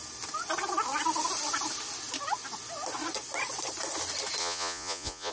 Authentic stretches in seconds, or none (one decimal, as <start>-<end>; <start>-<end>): 0.0-4.4